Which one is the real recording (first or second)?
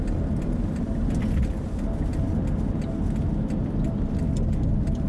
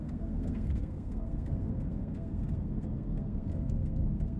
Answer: first